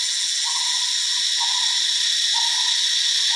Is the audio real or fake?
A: real